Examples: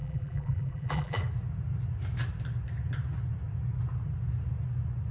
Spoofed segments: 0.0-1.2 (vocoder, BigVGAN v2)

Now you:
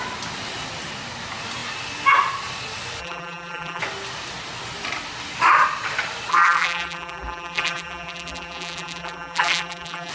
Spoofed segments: 3.0-3.8 (vocoder, BigVGAN v2); 6.3-10.1

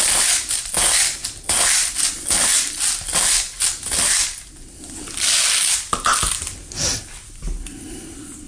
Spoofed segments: none

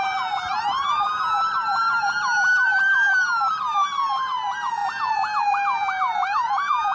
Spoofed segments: 0.0-6.9 (vocoder, BigVGAN v2)